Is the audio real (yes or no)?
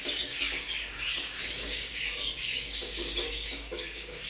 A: no